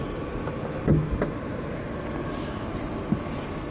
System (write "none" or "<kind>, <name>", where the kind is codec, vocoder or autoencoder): none